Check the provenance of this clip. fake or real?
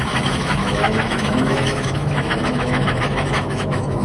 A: fake